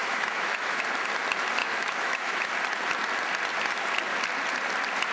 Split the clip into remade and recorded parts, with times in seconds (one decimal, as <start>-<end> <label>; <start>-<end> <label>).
0.0-0.8 remade; 0.8-1.6 recorded; 1.6-2.5 remade; 2.5-5.1 recorded